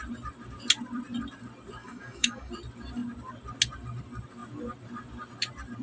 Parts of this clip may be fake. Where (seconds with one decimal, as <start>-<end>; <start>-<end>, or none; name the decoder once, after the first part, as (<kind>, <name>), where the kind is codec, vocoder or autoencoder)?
1.8-2.5 (codec, DAC)